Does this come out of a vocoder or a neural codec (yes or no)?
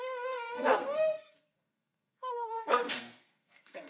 yes